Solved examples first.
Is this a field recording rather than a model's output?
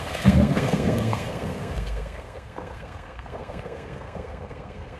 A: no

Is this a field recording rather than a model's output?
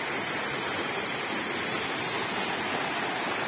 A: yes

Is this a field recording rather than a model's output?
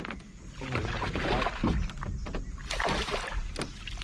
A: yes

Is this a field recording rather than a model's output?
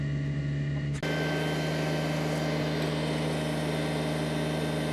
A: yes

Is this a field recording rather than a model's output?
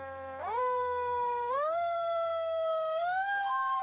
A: no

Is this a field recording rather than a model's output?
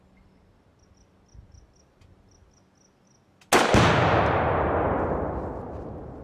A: yes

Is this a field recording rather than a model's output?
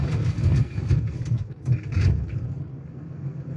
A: no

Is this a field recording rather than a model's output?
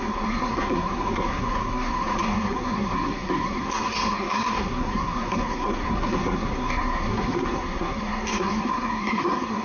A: no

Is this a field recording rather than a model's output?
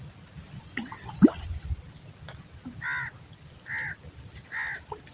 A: yes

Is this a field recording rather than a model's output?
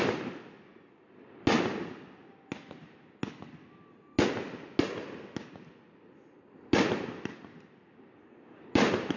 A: yes